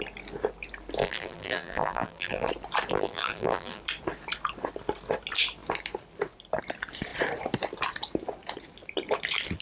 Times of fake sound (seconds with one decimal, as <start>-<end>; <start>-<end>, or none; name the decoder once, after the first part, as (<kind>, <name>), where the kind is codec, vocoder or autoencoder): 1.0-2.5 (vocoder, BigVGAN v2); 2.9-3.8